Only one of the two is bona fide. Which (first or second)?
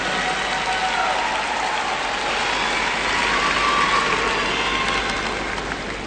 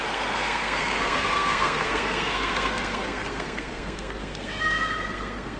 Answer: first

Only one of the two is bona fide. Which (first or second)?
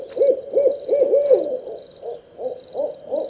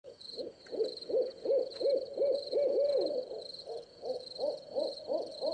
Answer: first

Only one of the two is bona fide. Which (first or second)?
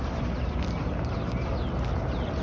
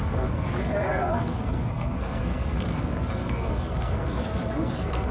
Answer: first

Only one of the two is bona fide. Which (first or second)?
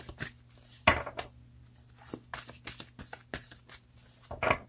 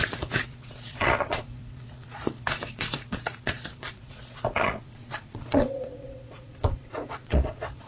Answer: first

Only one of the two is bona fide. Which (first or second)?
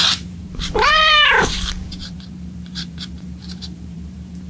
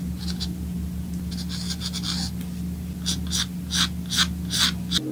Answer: second